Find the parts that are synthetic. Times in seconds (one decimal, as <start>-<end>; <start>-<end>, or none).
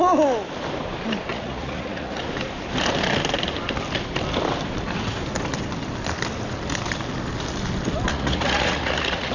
1.3-2.2; 8.1-9.3